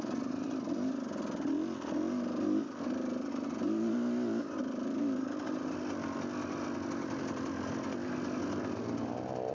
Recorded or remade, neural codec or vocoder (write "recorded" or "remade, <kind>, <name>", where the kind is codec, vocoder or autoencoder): recorded